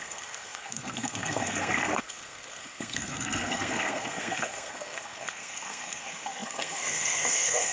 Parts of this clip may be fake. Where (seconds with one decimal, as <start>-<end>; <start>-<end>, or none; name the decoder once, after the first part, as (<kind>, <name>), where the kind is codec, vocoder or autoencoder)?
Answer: 0.0-7.7 (codec, SNAC)